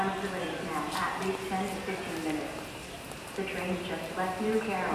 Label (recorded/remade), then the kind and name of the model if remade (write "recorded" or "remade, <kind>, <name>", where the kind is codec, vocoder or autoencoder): recorded